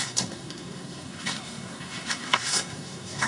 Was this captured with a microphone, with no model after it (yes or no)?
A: no